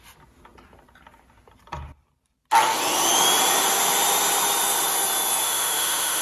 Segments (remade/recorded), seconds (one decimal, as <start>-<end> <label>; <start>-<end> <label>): 0.0-5.4 recorded; 5.4-6.2 remade